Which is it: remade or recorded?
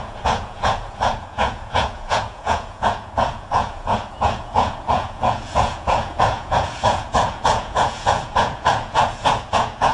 remade